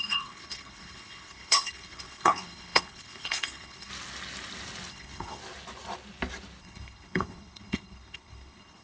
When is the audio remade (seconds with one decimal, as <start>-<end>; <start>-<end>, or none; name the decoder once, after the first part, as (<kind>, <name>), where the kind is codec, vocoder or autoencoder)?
0.0-3.9 (codec, HILCodec); 4.9-5.4; 6.6-8.8